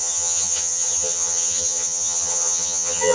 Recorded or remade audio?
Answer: remade